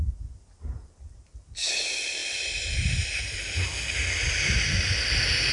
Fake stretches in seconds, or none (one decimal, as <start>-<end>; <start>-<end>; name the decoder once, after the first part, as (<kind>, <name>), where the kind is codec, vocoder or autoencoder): none